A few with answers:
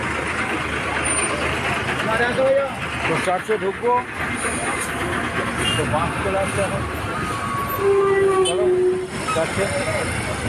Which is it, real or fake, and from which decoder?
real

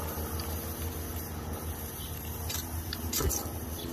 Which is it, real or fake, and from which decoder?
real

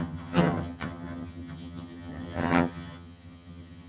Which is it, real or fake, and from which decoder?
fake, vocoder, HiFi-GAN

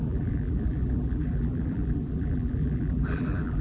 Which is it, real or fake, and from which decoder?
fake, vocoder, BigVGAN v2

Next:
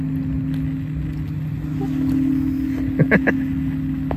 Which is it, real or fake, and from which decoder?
real